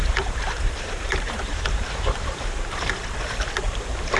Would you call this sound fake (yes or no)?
yes